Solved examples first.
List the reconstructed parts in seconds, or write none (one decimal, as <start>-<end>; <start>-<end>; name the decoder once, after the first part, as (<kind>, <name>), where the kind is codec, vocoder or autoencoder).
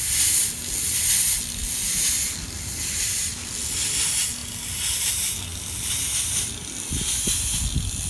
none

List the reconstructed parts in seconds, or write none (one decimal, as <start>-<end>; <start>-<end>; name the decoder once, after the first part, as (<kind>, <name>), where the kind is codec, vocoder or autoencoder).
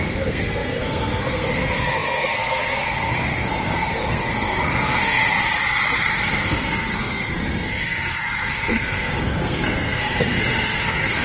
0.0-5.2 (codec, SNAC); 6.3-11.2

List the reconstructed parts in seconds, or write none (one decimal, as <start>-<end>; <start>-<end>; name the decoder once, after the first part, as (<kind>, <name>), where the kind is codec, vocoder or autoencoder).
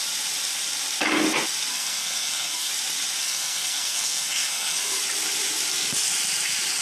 1.7-2.7 (codec, SNAC); 3.2-5.0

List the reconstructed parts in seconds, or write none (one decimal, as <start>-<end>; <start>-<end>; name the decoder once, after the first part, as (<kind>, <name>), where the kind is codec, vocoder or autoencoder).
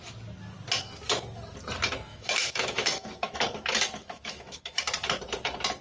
2.1-4.8 (autoencoder, DAC-VAE)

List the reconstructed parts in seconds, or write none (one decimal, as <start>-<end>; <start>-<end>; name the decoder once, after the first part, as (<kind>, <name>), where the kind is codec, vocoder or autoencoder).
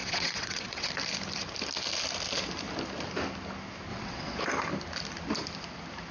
0.0-0.9 (vocoder, WaveNeXt); 3.9-4.4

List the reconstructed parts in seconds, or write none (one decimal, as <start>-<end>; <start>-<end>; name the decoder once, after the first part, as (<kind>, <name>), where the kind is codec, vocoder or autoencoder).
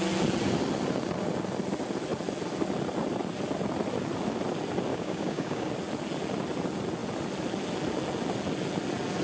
4.9-5.7 (codec, DAC)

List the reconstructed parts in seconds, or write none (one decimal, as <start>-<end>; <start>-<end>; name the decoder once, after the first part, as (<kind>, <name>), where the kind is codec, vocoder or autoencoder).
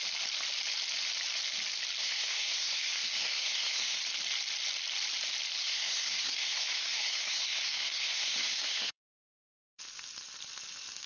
2.0-4.0 (codec, SNAC); 5.6-9.8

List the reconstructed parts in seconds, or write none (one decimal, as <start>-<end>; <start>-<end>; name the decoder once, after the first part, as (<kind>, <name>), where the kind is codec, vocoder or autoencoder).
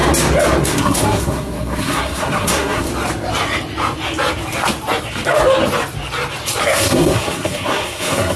0.6-2.9 (codec, SNAC); 6.6-8.4